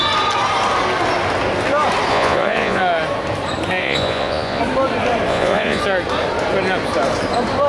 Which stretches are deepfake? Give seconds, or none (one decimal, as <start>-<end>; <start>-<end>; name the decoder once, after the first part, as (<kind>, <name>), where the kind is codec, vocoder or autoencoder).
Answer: 2.1-2.8 (vocoder, Vocos); 3.8-4.6; 5.3-5.8